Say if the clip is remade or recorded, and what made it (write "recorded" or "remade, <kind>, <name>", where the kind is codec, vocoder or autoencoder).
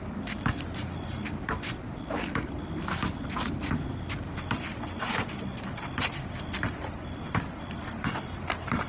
recorded